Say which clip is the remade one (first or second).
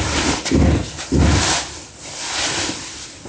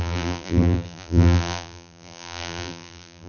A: second